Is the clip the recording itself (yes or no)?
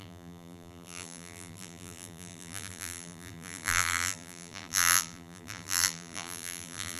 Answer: no